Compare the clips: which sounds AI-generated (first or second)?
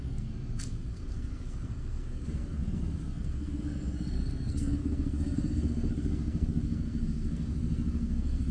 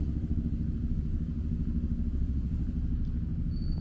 first